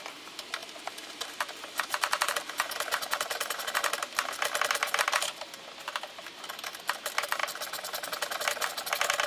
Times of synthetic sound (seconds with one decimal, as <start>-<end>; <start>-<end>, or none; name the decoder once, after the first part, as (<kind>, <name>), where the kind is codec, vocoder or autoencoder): 0.6-3.7 (vocoder, BigVGAN v2)